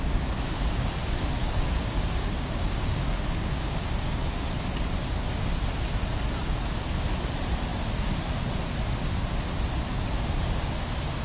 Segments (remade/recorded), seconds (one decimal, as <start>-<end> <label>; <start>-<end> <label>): 0.0-1.4 recorded; 1.4-4.2 remade; 4.2-11.2 recorded